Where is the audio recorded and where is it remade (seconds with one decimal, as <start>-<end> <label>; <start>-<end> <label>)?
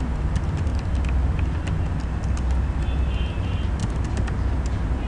0.0-5.1 recorded